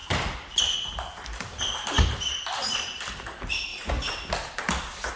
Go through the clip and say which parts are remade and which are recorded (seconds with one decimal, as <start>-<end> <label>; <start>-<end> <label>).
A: 0.0-3.1 remade; 3.1-5.2 recorded